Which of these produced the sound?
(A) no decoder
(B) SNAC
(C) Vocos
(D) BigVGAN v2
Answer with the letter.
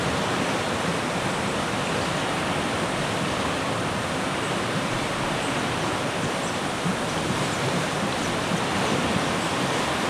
A